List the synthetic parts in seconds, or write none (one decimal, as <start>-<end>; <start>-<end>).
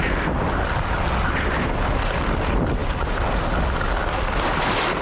none